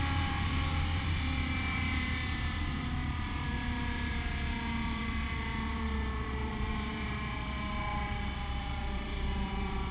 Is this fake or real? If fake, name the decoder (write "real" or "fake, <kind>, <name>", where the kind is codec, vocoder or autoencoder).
fake, vocoder, BigVGAN v2